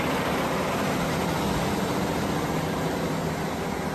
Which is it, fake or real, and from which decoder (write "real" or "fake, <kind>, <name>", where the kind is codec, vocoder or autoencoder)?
real